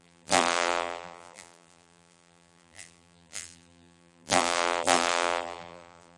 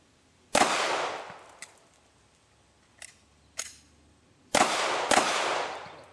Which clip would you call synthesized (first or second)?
first